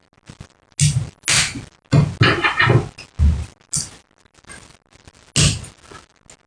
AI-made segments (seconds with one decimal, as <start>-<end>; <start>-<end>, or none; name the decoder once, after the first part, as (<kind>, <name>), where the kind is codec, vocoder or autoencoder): none